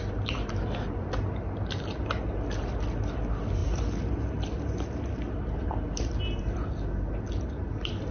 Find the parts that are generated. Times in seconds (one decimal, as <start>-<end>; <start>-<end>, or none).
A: none